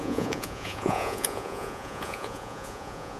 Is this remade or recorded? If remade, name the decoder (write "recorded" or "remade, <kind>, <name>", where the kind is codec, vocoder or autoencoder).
remade, vocoder, Vocos